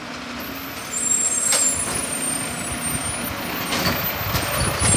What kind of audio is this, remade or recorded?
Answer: recorded